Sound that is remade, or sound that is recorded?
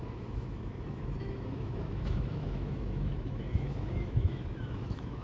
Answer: remade